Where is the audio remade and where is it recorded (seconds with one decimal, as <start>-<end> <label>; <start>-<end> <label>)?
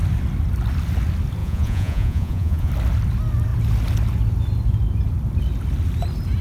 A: 0.0-1.4 recorded; 1.4-2.7 remade; 2.7-6.4 recorded